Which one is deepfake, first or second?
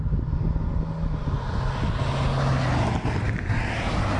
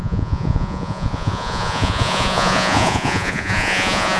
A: second